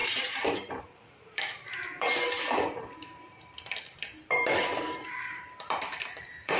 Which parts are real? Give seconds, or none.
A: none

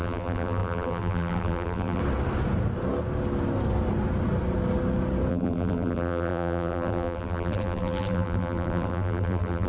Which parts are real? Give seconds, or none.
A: 2.0-5.3

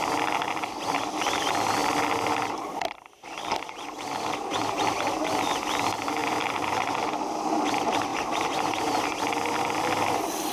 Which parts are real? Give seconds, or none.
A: 0.0-6.2; 6.9-8.1; 9.0-10.5

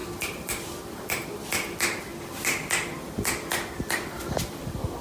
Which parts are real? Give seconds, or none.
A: 1.3-5.0

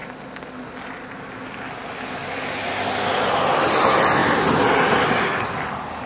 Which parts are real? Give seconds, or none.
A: 0.0-6.1

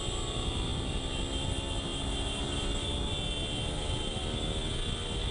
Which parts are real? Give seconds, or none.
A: 0.0-5.3

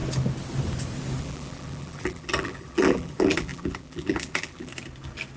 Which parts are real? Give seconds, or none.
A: 0.0-1.2; 4.7-5.4